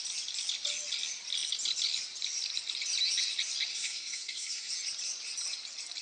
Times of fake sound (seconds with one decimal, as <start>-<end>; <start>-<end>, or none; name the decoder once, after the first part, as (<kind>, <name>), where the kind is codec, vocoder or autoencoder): 3.7-4.7 (codec, SNAC)